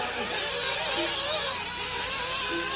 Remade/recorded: recorded